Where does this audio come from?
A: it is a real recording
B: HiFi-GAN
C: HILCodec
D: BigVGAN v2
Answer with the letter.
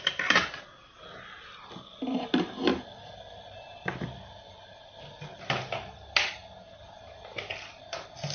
A